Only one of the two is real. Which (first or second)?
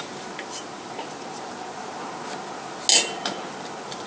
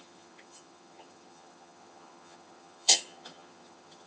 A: first